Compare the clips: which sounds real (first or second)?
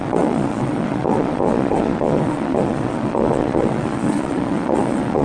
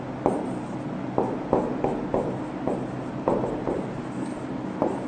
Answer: second